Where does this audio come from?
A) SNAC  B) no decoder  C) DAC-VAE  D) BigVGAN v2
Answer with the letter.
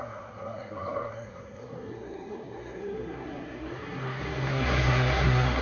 A